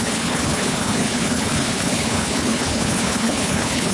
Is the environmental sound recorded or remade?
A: remade